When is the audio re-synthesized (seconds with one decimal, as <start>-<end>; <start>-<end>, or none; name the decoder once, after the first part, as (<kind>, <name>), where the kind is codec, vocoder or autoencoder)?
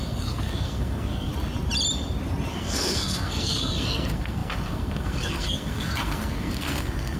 0.0-1.3 (codec, SNAC); 2.5-7.2